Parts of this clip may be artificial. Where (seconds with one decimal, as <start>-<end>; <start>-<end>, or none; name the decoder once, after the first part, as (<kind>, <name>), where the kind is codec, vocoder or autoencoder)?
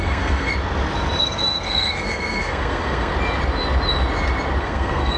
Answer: 0.0-0.5 (codec, SNAC); 1.2-3.1; 4.6-5.2